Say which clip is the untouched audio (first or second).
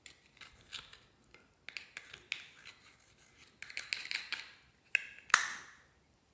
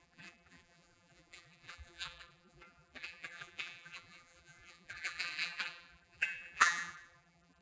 first